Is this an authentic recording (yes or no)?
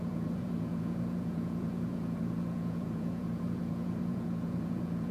no